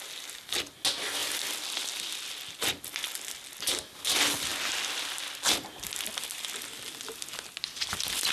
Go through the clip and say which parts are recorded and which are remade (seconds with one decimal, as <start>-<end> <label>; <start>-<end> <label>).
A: 0.0-1.2 recorded; 1.2-2.3 remade; 2.3-8.3 recorded